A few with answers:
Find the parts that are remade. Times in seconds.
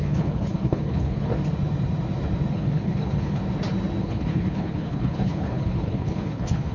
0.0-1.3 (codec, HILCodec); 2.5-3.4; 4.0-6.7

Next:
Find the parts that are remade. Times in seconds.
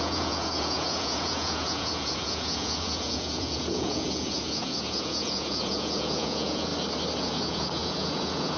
0.0-6.7 (vocoder, Vocos); 7.2-8.6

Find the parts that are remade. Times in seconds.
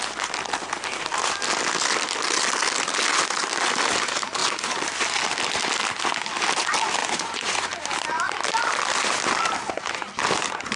7.0-7.6 (vocoder, Vocos)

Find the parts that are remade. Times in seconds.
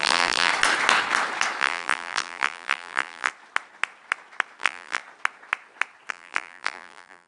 0.0-0.5 (vocoder, BigVGAN v2); 1.6-3.3; 4.6-5.0; 6.1-7.3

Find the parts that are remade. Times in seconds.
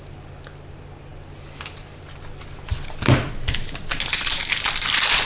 none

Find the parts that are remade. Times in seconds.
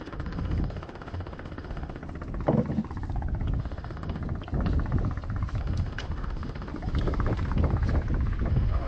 0.0-2.0 (autoencoder, DAC-VAE); 3.6-4.2; 5.6-6.7; 8.5-8.9